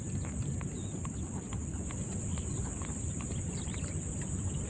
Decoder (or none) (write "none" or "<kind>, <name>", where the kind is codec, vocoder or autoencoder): none